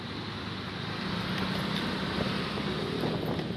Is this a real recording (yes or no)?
yes